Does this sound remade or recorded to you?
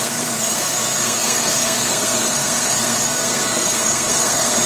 remade